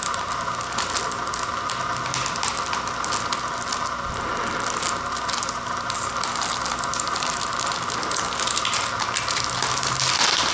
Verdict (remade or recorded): recorded